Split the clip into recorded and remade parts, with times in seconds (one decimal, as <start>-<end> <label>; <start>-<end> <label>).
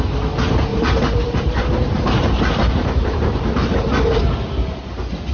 0.0-0.7 recorded; 0.7-3.9 remade; 3.9-5.3 recorded